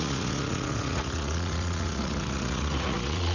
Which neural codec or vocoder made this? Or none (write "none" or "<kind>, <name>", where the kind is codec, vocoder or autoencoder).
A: vocoder, Vocos